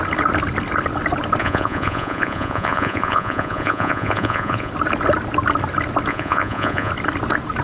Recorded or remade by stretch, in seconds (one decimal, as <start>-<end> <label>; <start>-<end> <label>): 0.0-1.4 recorded; 1.4-4.7 remade; 4.7-6.1 recorded; 6.1-6.9 remade; 6.9-7.6 recorded

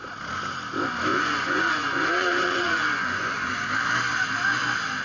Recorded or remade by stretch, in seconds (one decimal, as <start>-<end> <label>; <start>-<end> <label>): 0.0-1.1 recorded; 1.1-3.5 remade; 3.5-5.0 recorded